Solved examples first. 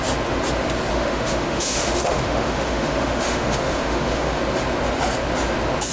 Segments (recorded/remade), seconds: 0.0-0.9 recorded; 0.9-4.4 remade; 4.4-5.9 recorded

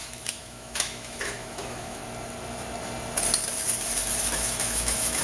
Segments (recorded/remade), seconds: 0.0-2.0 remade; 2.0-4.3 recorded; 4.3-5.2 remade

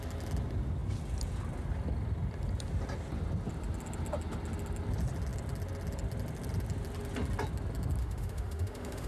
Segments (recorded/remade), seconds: 0.0-8.0 recorded; 8.0-9.1 remade